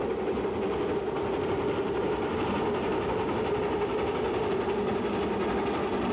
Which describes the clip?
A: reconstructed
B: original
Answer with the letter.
B